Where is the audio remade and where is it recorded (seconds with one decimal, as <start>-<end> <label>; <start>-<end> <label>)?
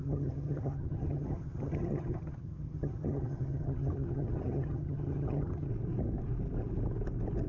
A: 0.0-5.7 remade; 5.7-7.5 recorded